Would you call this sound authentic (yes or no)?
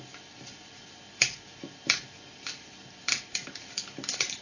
no